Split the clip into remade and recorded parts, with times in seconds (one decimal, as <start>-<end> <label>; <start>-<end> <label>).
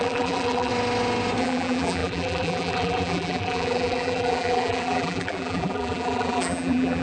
0.0-0.7 remade; 0.7-1.4 recorded; 1.4-7.0 remade